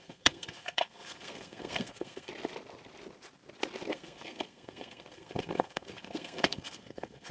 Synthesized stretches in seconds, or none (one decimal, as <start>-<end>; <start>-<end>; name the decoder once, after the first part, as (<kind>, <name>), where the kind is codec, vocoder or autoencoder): 0.0-2.3 (codec, SNAC); 3.9-7.3